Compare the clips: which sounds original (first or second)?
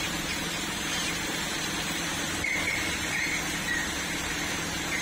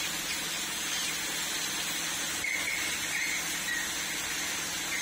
second